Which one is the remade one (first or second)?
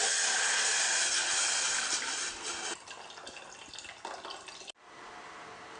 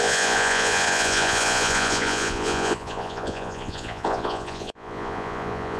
second